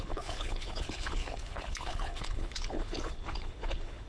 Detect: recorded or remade remade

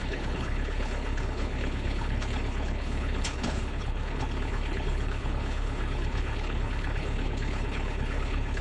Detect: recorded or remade remade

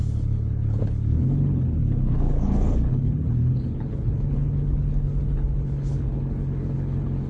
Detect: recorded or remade remade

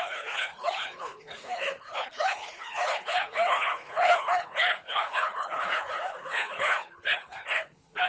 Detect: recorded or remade remade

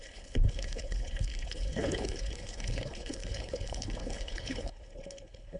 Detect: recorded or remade remade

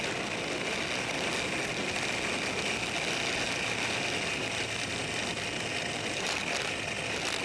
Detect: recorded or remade recorded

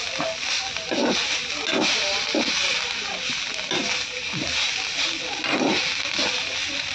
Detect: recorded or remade recorded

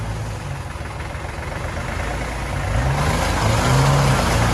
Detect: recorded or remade recorded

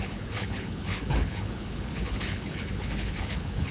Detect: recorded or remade remade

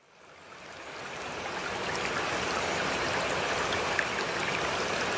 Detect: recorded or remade recorded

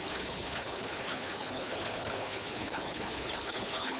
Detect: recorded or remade remade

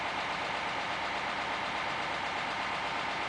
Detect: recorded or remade recorded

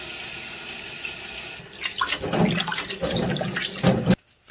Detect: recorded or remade recorded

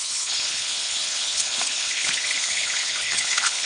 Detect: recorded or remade remade